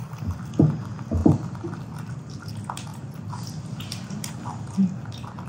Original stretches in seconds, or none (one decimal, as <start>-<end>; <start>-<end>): 0.0-5.5